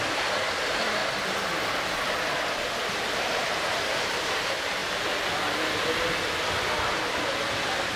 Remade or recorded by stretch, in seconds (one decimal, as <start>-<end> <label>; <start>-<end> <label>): 0.0-1.0 remade; 1.0-2.3 recorded; 2.3-4.8 remade; 4.8-6.9 recorded; 6.9-8.0 remade